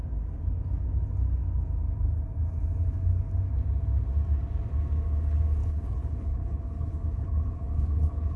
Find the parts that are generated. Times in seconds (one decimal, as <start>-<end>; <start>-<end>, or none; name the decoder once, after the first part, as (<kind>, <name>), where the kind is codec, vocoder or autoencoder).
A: 5.6-8.4 (codec, HILCodec)